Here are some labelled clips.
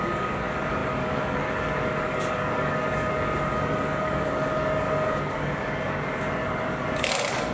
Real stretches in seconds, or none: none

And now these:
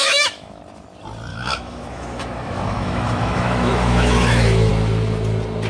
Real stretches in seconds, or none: 0.6-1.3; 4.7-5.7

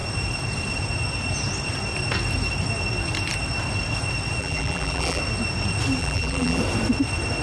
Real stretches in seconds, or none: 0.0-4.4; 5.2-6.0; 6.6-7.4

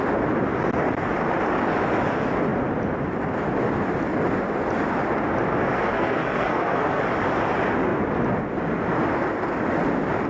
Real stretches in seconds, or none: 0.0-5.7; 7.0-10.3

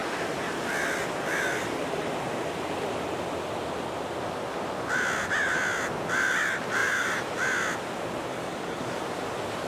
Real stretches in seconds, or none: 0.0-8.3; 9.0-9.7

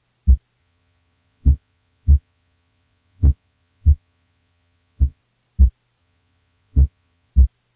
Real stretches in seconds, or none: 0.0-0.6; 5.2-6.0; 7.3-7.8

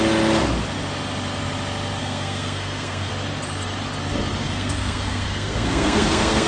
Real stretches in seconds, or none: 0.0-2.0; 3.1-4.4

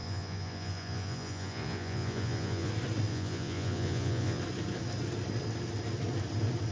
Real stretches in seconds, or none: 2.7-3.1; 4.4-6.7